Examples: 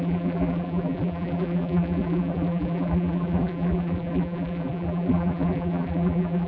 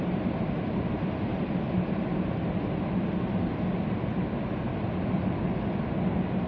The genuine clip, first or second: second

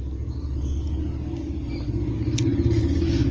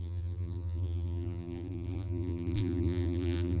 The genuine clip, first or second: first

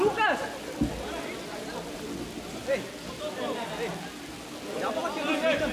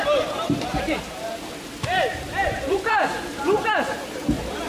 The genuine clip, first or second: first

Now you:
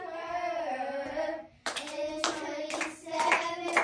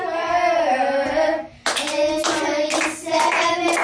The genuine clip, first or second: second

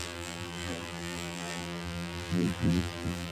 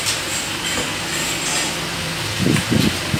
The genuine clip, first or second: second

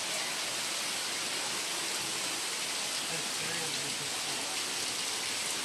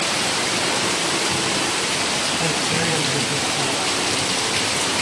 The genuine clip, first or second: first